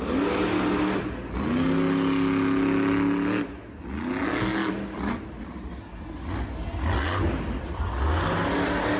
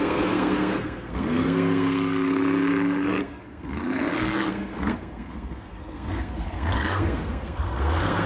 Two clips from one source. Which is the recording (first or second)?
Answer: first